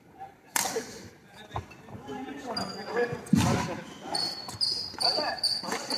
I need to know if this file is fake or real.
real